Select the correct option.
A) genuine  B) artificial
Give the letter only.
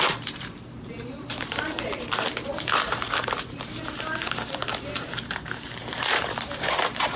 B